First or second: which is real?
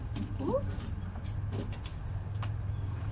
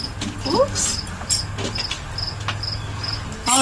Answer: second